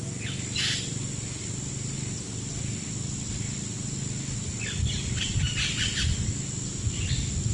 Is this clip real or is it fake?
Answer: real